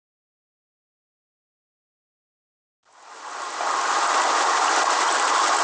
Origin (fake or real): real